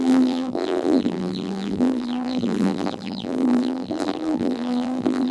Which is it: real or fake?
fake